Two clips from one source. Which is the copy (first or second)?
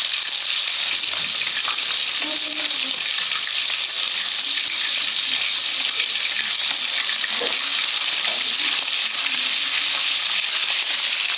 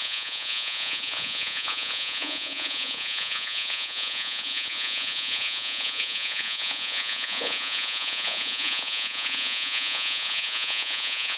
second